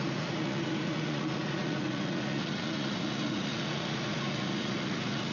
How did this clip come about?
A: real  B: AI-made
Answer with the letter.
B